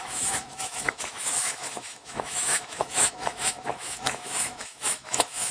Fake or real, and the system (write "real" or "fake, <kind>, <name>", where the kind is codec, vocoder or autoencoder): fake, autoencoder, DAC-VAE